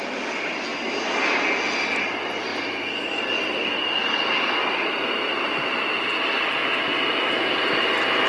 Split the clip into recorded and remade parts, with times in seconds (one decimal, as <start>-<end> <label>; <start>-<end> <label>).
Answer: 0.0-8.3 recorded